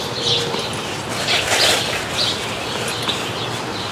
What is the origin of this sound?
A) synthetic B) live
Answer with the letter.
B